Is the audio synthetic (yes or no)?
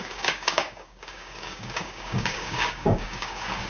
yes